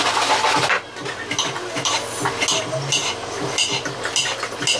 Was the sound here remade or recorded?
recorded